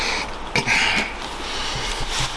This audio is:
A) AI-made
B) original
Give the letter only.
B